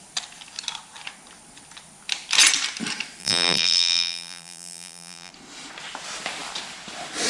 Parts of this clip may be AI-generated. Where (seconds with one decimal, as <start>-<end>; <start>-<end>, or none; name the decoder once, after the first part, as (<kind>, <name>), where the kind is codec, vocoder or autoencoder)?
3.2-5.3 (vocoder, BigVGAN v2)